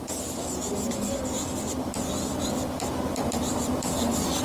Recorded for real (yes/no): yes